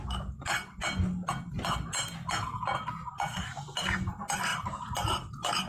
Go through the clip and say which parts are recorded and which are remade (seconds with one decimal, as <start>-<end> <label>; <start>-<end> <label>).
0.0-5.7 recorded